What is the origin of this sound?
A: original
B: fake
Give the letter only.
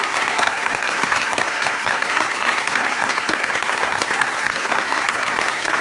B